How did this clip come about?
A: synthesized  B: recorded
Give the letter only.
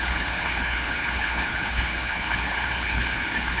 A